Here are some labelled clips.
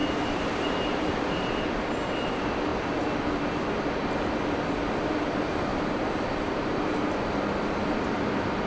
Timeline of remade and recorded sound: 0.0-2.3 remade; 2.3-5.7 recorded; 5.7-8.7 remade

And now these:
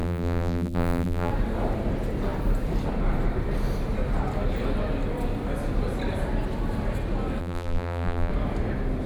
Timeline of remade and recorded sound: 0.0-1.3 remade; 1.3-7.4 recorded; 7.4-8.3 remade; 8.3-9.1 recorded

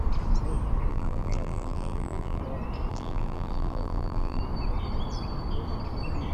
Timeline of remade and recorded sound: 0.0-0.9 recorded; 0.9-2.4 remade; 2.4-2.9 recorded; 2.9-4.4 remade; 4.4-6.3 recorded

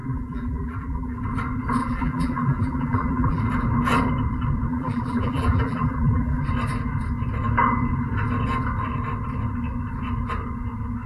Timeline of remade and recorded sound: 0.0-1.2 remade; 1.2-1.8 recorded; 1.8-3.4 remade; 3.4-4.7 recorded; 4.7-6.4 remade; 6.4-11.1 recorded

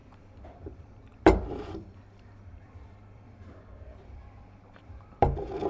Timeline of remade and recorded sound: 0.0-5.7 remade